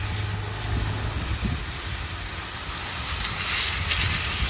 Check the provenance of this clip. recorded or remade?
recorded